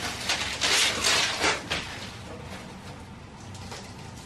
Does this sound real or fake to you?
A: real